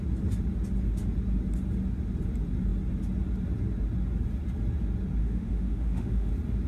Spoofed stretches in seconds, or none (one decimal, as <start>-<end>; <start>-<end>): 5.2-6.3